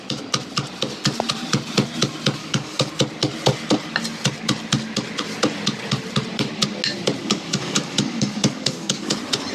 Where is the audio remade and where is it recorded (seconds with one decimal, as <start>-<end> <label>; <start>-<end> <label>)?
0.0-2.4 recorded; 2.4-2.9 remade; 2.9-7.2 recorded; 7.2-9.1 remade; 9.1-9.5 recorded